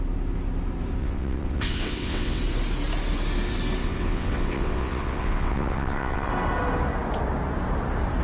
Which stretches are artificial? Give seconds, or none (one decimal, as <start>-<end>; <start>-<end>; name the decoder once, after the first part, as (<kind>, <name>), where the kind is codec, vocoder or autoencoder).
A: 1.0-2.4 (vocoder, WaveNeXt); 3.8-6.3